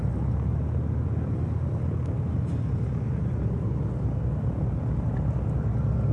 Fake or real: real